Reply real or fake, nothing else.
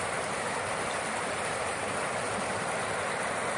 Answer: real